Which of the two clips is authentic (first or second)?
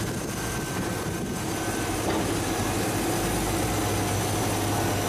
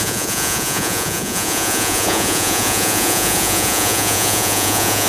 first